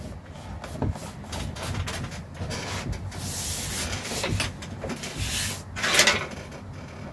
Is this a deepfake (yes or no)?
no